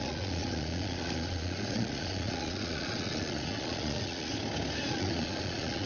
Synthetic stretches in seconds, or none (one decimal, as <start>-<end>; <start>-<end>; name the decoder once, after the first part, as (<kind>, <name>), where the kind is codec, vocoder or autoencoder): 0.0-4.3 (vocoder, Vocos); 4.9-5.9